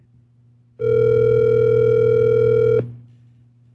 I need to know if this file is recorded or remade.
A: recorded